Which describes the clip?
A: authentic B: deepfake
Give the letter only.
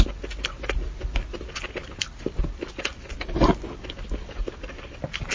A